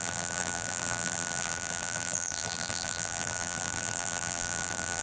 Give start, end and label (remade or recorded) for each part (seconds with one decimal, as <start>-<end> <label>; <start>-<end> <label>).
0.0-5.0 remade